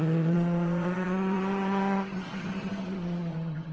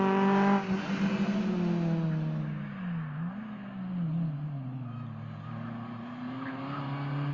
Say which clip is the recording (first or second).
second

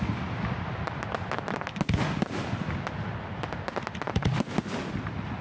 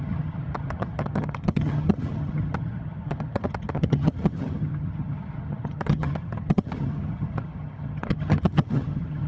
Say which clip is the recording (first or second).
first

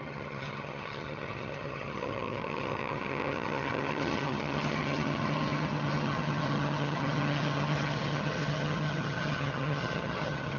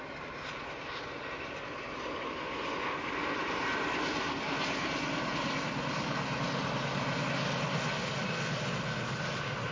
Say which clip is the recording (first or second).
second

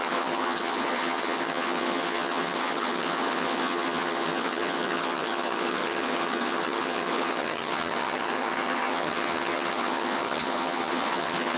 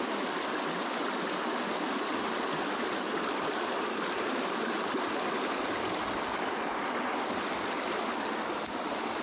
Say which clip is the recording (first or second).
second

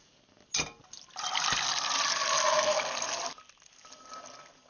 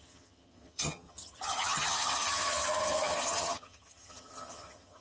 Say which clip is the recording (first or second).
first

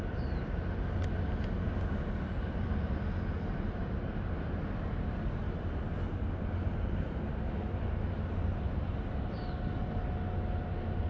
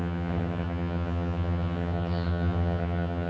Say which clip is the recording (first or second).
first